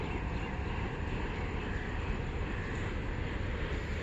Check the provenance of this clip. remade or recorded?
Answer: recorded